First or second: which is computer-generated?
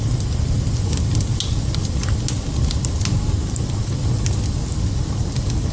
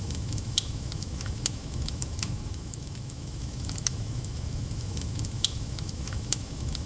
second